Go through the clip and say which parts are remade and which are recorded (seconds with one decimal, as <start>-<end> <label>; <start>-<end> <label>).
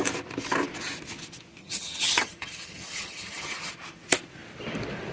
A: 0.0-1.6 recorded; 1.6-3.7 remade; 3.7-5.1 recorded